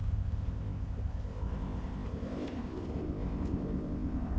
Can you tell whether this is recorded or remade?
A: remade